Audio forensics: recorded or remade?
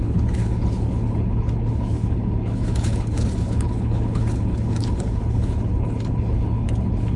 remade